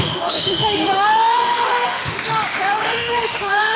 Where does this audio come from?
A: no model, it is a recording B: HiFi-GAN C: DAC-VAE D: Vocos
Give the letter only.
C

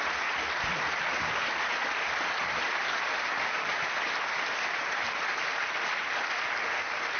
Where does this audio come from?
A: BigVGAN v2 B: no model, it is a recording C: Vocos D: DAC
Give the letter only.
B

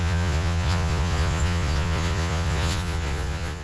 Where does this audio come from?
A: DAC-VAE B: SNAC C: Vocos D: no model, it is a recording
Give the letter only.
C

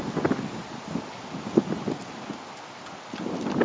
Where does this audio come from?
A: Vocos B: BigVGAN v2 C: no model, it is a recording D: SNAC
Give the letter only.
C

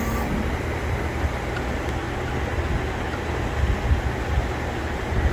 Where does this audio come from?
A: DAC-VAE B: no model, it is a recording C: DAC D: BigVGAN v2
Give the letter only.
B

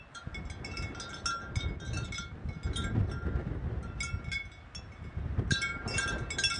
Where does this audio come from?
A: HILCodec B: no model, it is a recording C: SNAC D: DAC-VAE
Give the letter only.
B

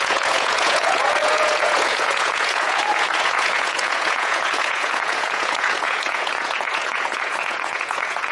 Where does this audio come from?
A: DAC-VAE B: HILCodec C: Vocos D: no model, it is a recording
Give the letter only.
C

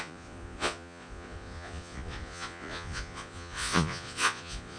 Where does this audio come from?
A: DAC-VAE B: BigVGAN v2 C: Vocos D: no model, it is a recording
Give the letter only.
C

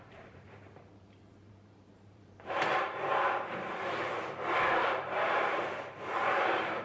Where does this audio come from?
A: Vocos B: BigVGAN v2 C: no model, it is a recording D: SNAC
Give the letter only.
B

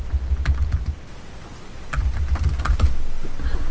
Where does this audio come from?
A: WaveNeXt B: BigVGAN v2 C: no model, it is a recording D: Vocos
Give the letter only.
C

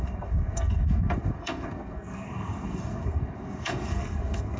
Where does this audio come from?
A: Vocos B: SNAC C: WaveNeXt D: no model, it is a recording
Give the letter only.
B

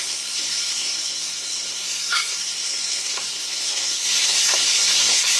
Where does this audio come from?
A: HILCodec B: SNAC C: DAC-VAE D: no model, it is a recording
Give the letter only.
B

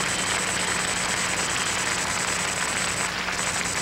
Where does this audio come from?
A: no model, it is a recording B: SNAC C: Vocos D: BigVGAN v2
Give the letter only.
A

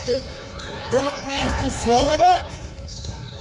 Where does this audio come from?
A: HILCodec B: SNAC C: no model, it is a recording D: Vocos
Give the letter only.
B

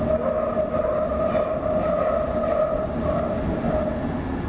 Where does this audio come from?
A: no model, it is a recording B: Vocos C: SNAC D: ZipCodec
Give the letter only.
A